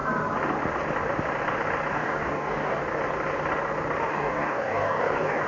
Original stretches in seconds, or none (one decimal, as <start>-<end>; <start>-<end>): 0.0-1.9; 2.8-4.1